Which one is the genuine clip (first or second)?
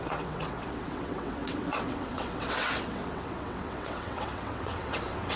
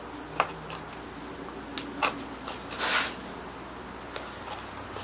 second